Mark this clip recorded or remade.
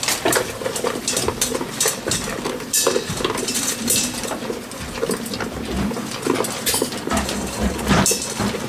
recorded